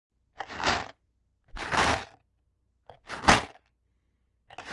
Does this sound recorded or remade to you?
recorded